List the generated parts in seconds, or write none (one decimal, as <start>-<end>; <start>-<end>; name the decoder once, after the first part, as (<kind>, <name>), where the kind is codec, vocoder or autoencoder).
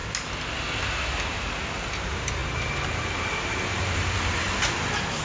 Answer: 3.7-4.3 (vocoder, BigVGAN v2)